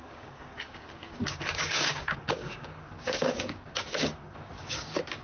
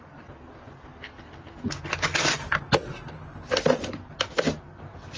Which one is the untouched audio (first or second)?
second